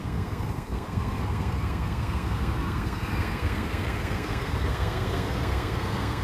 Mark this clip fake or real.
fake